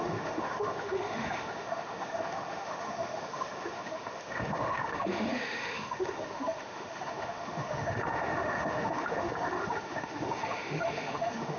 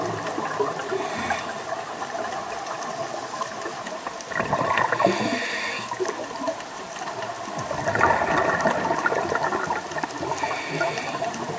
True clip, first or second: second